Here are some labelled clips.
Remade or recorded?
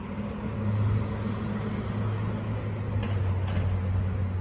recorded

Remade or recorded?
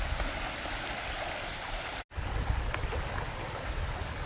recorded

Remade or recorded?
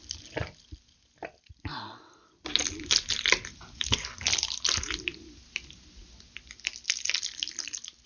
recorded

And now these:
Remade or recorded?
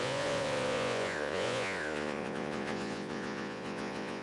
remade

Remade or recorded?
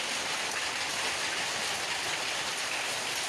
recorded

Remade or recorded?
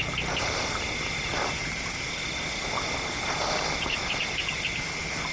recorded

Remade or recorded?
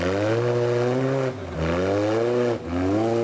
recorded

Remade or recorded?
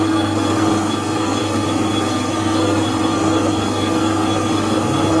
remade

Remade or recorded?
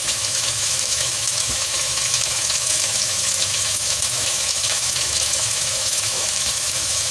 remade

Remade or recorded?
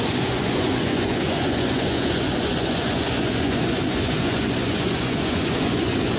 remade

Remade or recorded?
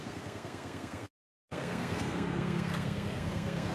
remade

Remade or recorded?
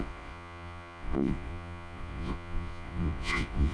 remade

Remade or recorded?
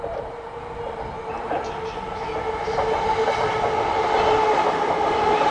recorded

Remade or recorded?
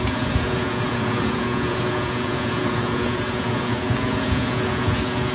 remade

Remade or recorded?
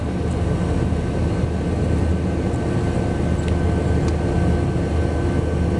recorded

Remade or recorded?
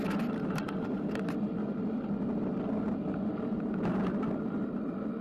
recorded